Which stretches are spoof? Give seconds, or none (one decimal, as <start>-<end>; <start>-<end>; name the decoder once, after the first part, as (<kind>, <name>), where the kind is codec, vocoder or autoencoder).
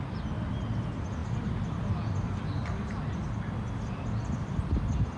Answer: none